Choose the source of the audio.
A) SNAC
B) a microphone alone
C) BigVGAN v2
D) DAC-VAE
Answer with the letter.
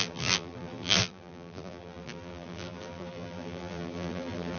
C